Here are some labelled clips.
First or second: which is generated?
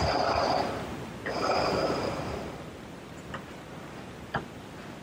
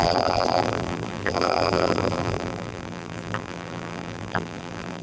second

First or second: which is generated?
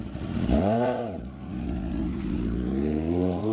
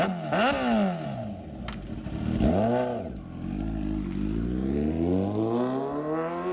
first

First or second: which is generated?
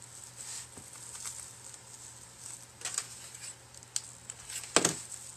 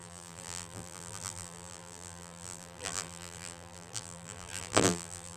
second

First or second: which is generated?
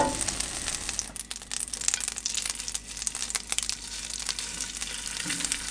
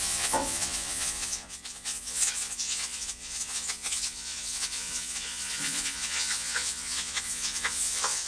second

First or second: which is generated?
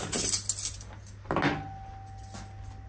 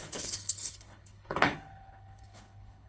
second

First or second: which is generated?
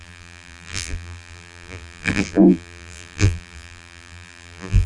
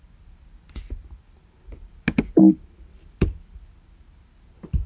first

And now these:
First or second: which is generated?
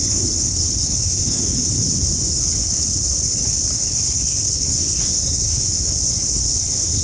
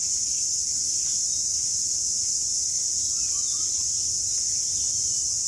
first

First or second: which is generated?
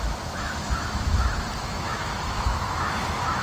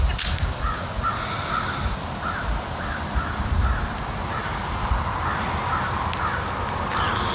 first